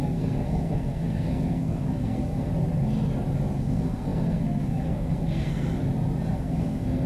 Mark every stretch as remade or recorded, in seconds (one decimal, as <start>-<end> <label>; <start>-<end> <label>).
0.0-2.5 remade; 2.5-3.6 recorded; 3.6-5.8 remade; 5.8-6.3 recorded; 6.3-7.1 remade